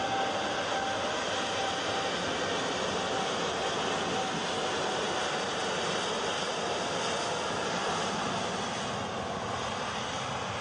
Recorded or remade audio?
recorded